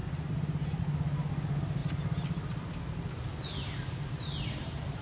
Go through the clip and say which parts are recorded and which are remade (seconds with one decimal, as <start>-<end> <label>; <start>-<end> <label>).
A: 0.0-5.0 recorded

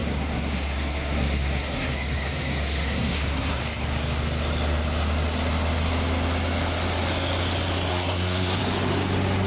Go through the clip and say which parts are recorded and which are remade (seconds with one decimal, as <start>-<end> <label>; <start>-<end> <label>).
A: 0.0-3.6 remade; 3.6-7.9 recorded; 7.9-8.6 remade; 8.6-9.5 recorded

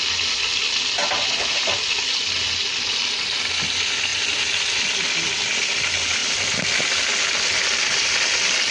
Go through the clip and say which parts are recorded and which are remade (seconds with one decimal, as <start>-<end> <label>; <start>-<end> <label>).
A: 0.0-8.7 recorded

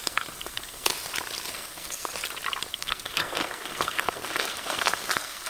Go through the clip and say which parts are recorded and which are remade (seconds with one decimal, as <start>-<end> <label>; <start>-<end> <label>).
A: 0.0-0.9 remade; 0.9-1.5 recorded; 1.5-2.1 remade; 2.1-2.7 recorded; 2.7-5.5 remade